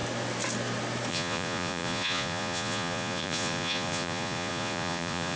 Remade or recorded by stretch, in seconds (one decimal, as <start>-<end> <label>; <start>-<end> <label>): 0.0-1.1 recorded; 1.1-5.4 remade